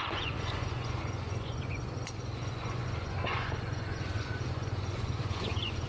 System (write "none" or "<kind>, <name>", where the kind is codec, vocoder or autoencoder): vocoder, Vocos